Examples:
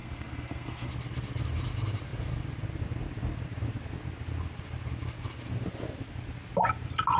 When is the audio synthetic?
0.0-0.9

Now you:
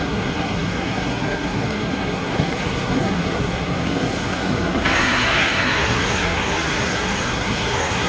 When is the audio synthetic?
0.0-8.1

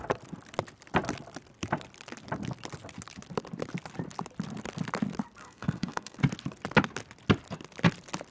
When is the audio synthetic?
5.4-6.2

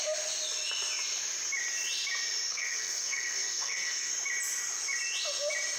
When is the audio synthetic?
2.5-4.1

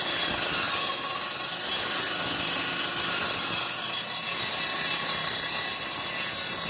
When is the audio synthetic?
none

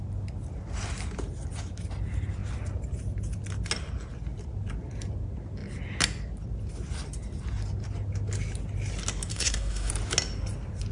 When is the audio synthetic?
9.3-9.9

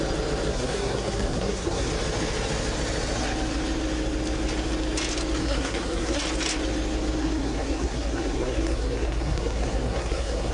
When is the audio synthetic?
0.5-1.9; 5.4-6.2; 7.2-10.5